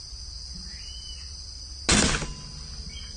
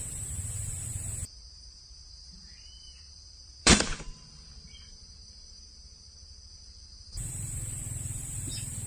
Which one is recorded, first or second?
first